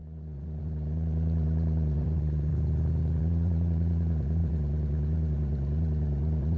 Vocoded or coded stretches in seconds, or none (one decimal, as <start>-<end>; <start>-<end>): 0.0-2.5; 3.2-6.6